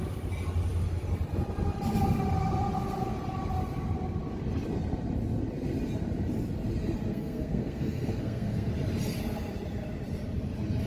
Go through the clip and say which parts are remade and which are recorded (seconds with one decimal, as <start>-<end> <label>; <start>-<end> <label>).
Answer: 0.0-7.1 recorded; 7.1-8.7 remade; 8.7-10.9 recorded